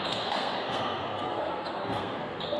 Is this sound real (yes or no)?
no